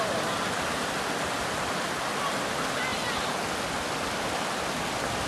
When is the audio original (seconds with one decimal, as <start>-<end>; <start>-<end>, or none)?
0.0-5.3